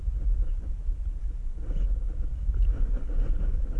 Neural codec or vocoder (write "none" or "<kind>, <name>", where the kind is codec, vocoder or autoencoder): none